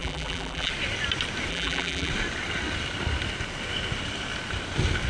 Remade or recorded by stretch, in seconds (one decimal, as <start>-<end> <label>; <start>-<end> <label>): 0.0-0.7 remade; 0.7-1.5 recorded; 1.5-2.1 remade; 2.1-5.1 recorded